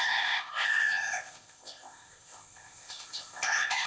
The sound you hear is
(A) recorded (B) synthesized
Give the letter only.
B